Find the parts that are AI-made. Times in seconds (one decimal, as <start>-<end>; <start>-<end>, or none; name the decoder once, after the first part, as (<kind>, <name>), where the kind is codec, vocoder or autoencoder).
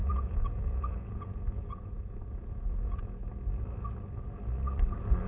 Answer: 0.0-3.2 (vocoder, Vocos)